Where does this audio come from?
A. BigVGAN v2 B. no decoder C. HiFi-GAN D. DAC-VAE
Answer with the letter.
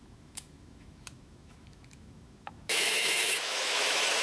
D